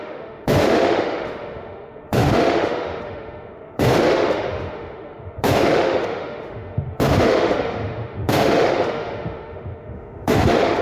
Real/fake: fake